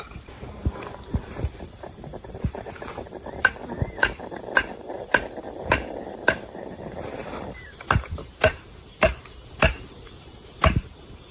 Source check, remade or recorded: remade